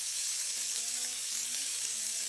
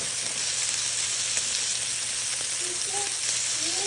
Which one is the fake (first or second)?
first